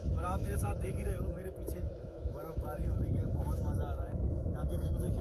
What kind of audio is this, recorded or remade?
remade